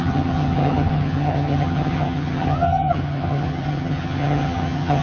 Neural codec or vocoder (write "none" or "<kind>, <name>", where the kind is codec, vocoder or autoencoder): vocoder, HiFi-GAN